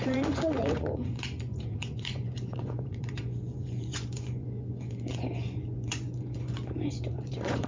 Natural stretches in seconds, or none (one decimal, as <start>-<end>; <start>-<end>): none